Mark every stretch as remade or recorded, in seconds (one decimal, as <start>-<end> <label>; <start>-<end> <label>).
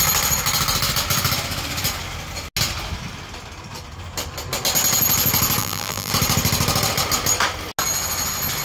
0.0-5.6 recorded; 5.6-6.1 remade; 6.1-8.6 recorded